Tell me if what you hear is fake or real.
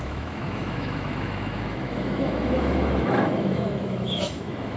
fake